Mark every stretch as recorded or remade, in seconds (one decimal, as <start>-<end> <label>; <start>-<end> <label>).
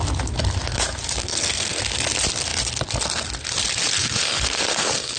0.0-1.2 recorded; 1.2-1.8 remade; 1.8-3.9 recorded; 3.9-5.2 remade